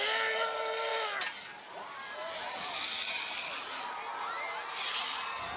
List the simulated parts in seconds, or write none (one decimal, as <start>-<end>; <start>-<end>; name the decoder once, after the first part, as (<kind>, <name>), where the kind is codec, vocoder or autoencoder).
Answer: none